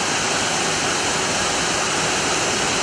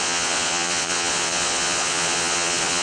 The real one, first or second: first